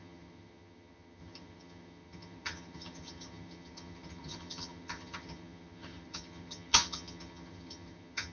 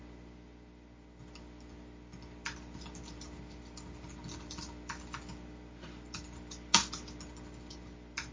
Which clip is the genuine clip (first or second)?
second